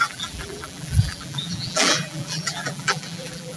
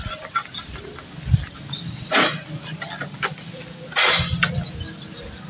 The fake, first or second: first